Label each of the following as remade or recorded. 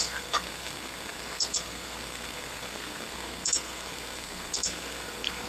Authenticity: remade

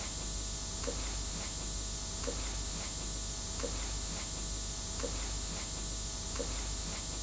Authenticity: recorded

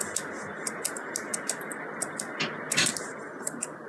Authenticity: recorded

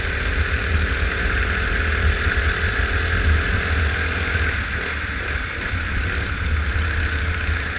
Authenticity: recorded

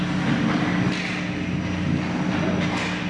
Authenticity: recorded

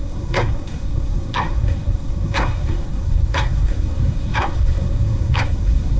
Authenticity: remade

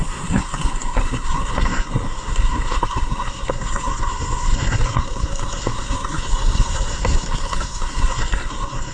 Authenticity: remade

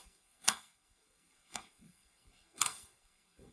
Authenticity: remade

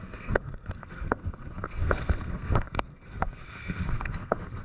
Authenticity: remade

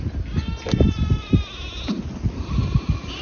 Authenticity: recorded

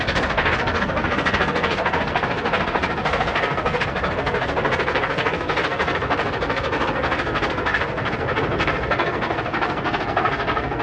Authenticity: remade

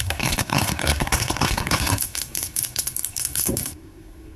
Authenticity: remade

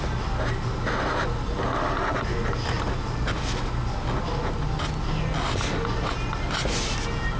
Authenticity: recorded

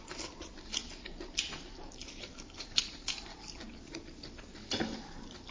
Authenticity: recorded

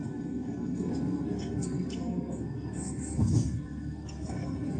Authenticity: remade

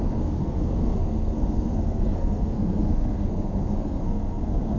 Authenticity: remade